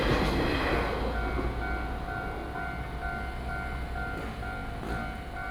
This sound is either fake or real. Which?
real